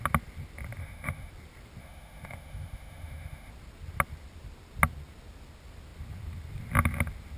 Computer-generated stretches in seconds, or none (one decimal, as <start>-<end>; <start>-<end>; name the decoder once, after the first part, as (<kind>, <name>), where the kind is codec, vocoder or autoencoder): 0.8-1.3 (autoencoder, DAC-VAE); 1.8-3.5